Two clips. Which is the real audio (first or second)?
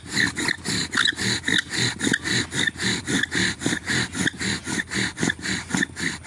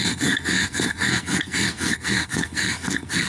first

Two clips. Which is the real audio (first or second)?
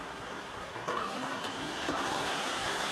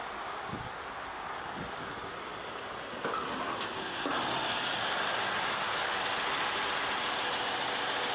second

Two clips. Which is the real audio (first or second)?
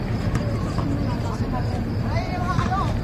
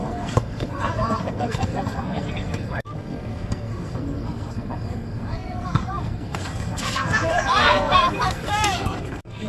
first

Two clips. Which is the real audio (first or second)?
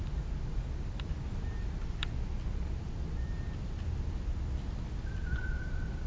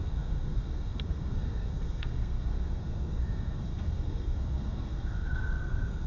first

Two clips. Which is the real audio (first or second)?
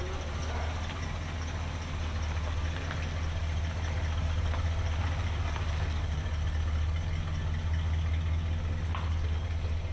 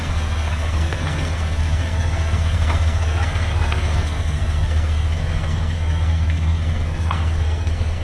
first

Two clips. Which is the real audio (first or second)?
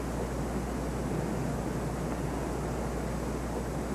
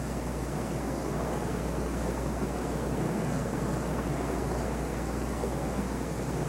first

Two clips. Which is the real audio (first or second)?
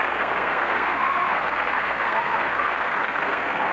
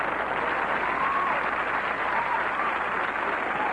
second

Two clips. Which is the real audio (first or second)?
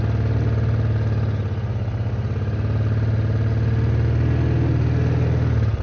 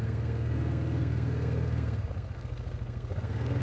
first